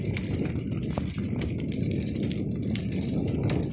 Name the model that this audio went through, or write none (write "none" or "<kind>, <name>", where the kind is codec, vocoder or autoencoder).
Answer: none